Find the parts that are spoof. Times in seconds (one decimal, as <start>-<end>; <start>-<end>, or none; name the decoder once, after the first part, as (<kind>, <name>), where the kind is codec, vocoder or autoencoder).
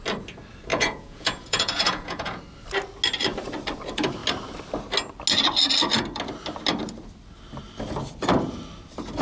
0.7-2.4 (vocoder, Vocos)